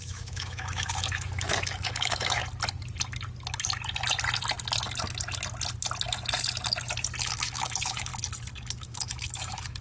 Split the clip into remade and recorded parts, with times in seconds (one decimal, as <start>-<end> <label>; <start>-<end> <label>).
0.0-2.4 remade; 2.4-7.2 recorded; 7.2-8.1 remade; 8.1-8.7 recorded; 8.7-9.8 remade